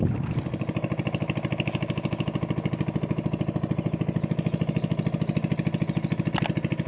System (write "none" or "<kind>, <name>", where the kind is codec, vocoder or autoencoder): none